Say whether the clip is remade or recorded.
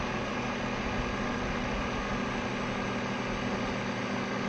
recorded